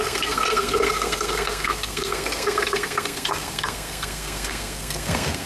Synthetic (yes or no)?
yes